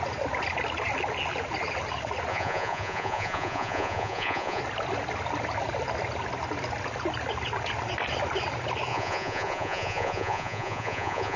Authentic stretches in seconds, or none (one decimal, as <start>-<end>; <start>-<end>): 0.0-2.3; 4.6-8.9

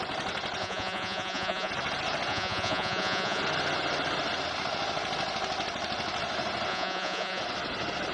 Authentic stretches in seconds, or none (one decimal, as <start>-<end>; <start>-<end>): 0.0-0.6; 1.7-2.3; 3.4-6.7; 7.4-8.1

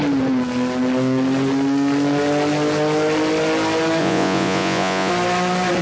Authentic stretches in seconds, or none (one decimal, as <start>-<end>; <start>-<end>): 0.0-4.0; 5.1-5.8